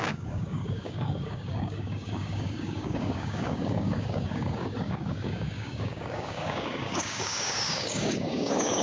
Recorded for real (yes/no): no